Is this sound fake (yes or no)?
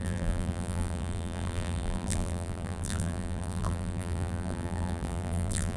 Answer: yes